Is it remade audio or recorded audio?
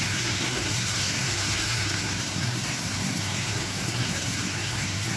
remade